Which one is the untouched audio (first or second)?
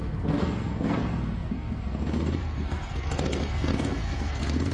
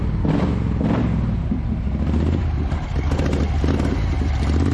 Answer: second